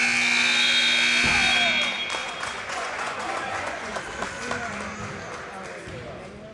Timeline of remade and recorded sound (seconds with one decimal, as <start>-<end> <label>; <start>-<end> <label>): 0.0-2.2 recorded; 2.2-4.0 remade; 4.0-6.5 recorded